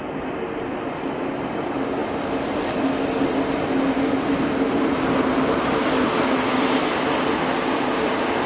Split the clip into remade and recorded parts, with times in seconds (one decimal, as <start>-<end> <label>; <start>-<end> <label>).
0.0-8.5 recorded

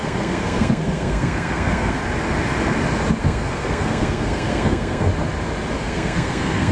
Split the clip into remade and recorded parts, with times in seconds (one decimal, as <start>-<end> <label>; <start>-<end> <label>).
0.0-2.0 remade; 2.0-3.2 recorded; 3.2-5.1 remade; 5.1-5.8 recorded; 5.8-6.7 remade

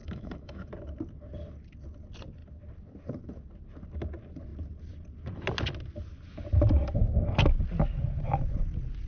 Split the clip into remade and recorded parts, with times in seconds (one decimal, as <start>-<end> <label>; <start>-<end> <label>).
0.0-0.7 remade; 0.7-9.1 recorded

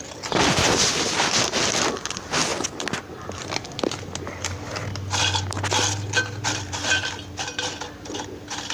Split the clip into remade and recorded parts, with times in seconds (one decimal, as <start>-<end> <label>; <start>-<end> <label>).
0.0-8.7 recorded

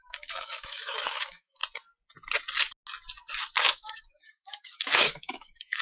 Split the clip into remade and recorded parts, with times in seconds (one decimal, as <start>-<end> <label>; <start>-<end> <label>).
0.0-1.6 remade; 1.6-3.7 recorded; 3.7-5.8 remade

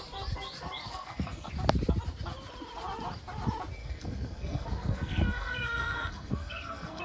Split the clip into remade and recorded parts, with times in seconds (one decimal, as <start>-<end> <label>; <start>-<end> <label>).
0.0-0.8 recorded; 0.8-1.5 remade; 1.5-3.8 recorded; 3.8-7.0 remade

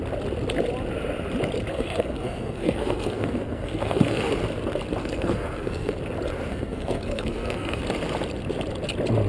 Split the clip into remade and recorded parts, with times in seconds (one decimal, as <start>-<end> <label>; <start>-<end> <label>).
0.0-1.7 recorded; 1.7-4.3 remade; 4.3-5.0 recorded; 5.0-6.0 remade; 6.0-6.5 recorded; 6.5-7.8 remade; 7.8-9.3 recorded